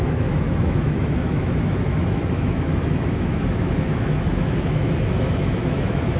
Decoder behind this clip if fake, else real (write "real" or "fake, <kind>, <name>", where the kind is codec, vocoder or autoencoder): fake, autoencoder, DAC-VAE